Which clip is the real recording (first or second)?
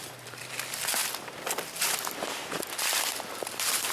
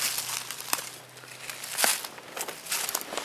second